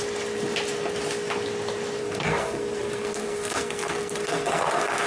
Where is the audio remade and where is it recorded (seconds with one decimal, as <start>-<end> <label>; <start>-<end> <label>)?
0.0-2.0 recorded; 2.0-5.1 remade